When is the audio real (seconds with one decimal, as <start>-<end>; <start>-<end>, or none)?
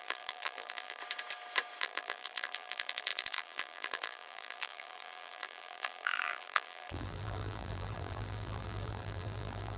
1.0-1.8